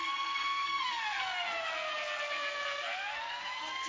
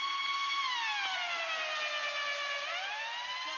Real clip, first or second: second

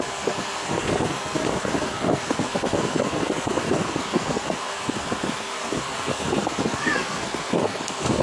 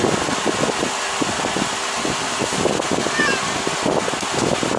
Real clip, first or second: second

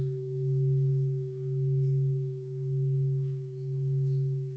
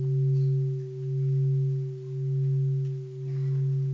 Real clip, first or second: second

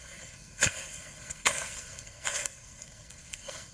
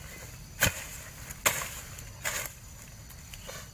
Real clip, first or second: second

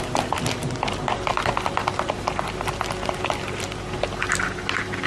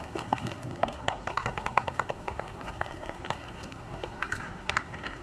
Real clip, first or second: first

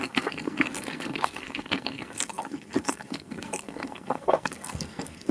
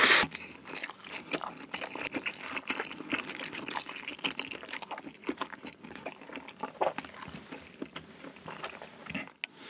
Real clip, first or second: second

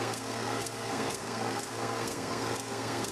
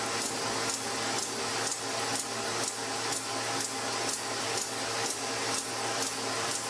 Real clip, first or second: second